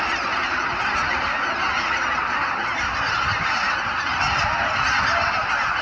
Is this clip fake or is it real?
real